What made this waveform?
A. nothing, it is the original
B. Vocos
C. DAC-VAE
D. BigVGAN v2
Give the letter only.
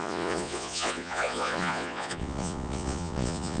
B